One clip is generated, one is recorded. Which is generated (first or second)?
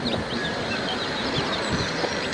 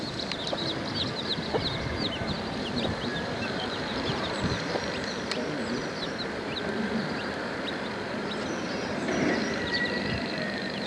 second